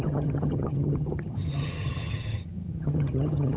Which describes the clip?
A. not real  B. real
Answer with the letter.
A